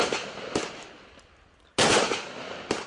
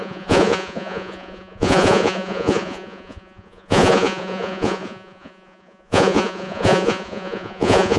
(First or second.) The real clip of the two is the first